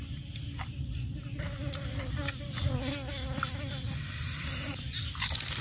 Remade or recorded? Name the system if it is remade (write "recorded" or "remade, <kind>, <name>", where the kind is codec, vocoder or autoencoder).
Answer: recorded